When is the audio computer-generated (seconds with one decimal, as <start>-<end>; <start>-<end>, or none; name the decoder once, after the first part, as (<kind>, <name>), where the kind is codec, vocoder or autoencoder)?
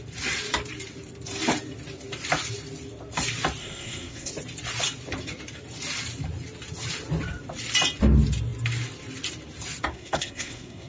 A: 3.6-4.3 (codec, SNAC); 9.9-10.9